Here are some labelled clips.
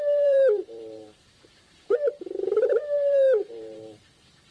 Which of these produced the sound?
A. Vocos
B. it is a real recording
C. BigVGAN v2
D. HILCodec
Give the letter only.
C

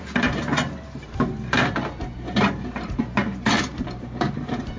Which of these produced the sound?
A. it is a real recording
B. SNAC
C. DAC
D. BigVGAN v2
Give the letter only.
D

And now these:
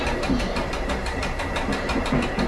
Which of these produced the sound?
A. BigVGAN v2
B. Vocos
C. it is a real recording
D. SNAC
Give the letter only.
A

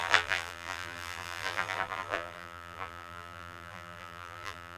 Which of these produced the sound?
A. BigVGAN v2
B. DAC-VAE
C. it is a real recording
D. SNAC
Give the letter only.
A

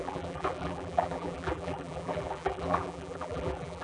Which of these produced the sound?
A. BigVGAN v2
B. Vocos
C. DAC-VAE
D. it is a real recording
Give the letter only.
A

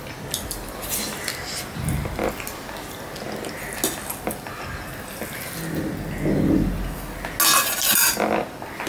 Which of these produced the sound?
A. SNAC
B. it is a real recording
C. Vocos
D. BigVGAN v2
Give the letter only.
B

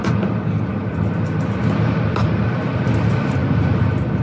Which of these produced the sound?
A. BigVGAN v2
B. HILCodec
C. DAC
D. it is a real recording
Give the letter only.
D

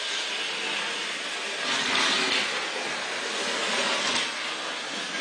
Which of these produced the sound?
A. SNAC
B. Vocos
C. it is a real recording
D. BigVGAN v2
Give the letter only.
C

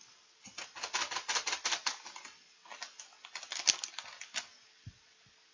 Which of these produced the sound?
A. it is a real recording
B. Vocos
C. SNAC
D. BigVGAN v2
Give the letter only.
A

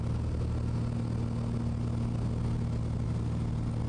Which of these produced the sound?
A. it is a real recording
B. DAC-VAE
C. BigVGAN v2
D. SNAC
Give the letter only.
A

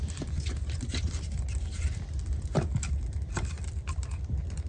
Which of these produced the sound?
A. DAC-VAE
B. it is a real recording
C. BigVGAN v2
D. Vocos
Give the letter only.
C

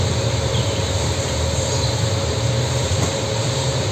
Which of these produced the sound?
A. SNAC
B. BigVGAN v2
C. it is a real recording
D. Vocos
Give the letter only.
B